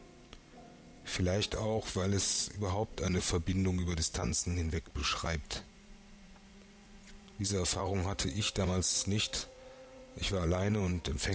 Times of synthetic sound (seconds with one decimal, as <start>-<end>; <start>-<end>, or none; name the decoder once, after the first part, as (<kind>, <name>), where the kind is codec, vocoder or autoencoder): 0.0-3.2 (vocoder, Vocos); 3.8-11.3